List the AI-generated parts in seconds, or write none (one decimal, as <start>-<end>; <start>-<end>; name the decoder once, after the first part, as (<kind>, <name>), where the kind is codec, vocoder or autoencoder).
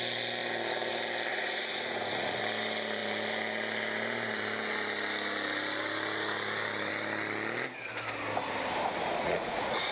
1.3-2.4 (vocoder, Vocos); 9.2-9.9